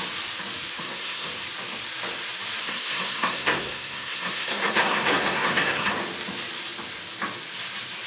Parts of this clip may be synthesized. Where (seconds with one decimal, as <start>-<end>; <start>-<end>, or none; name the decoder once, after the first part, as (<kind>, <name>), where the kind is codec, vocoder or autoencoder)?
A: 0.8-1.3 (codec, SNAC); 2.6-5.9